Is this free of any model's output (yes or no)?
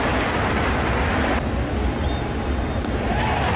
yes